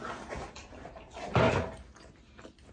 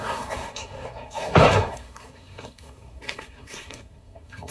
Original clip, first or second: first